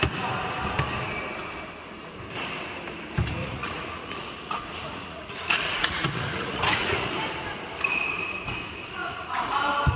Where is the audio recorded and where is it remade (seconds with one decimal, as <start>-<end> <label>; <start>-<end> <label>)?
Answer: 0.0-3.4 recorded; 3.4-7.1 remade; 7.1-9.0 recorded; 9.0-9.5 remade; 9.5-10.0 recorded